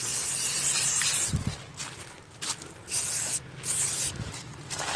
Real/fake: real